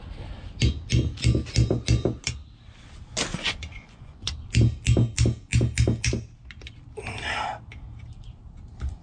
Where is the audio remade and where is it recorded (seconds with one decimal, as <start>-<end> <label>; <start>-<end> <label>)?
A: 0.0-3.3 recorded; 3.3-4.3 remade; 4.3-9.0 recorded